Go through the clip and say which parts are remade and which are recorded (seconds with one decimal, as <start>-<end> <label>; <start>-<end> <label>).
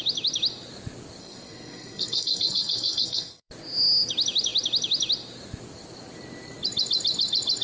0.0-1.2 recorded; 1.2-3.5 remade; 3.5-7.6 recorded